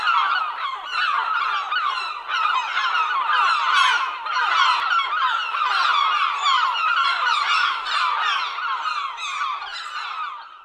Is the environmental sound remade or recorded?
recorded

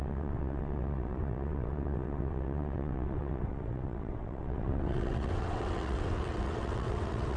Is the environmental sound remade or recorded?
remade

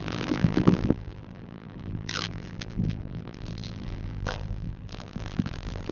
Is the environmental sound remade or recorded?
remade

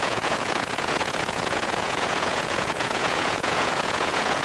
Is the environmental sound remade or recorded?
remade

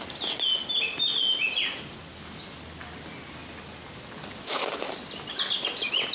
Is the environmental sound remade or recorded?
recorded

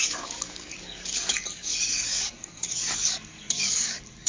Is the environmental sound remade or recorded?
remade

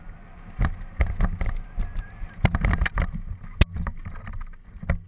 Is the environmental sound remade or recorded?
recorded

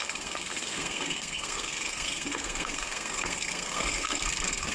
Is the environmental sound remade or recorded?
remade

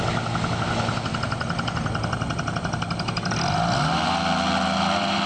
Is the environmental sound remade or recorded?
recorded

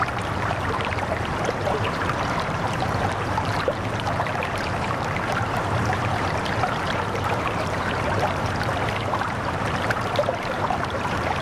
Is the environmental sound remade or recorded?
remade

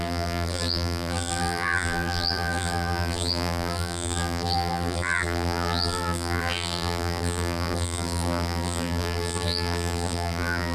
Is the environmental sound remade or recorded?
remade